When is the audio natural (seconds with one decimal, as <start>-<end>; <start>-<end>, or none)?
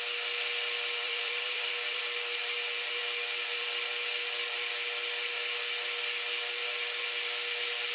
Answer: 0.0-1.0; 2.0-7.9